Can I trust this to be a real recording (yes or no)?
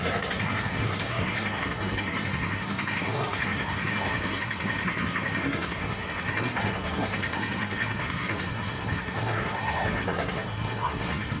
no